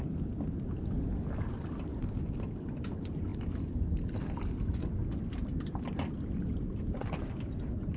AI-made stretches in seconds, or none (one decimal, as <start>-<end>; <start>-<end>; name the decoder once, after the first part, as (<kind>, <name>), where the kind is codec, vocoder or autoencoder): none

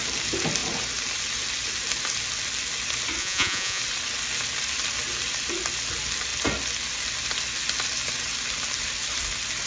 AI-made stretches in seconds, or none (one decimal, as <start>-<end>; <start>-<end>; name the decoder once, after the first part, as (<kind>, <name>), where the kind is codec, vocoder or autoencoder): 3.2-3.8 (vocoder, Vocos)